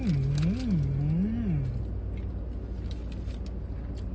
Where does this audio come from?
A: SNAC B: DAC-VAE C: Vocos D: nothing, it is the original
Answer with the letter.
D